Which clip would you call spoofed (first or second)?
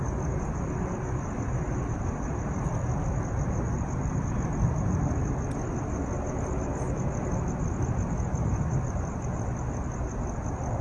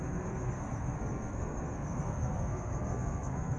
second